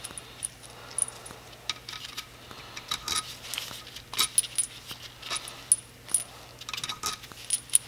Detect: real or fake real